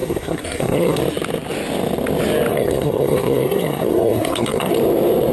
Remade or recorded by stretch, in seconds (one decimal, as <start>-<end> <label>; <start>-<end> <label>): 0.0-1.0 remade; 1.0-2.5 recorded; 2.5-4.7 remade; 4.7-5.3 recorded